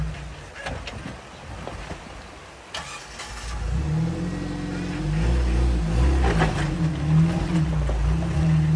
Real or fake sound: real